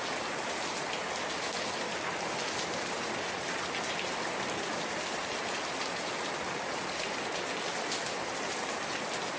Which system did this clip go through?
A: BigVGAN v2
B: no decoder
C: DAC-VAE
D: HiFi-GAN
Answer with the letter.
B